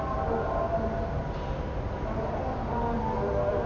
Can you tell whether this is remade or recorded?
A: recorded